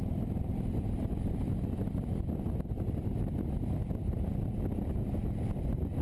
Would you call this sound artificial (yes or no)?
no